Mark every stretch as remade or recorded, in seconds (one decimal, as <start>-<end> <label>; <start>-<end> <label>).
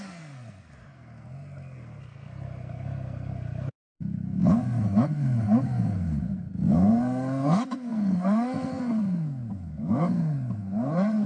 0.0-11.3 remade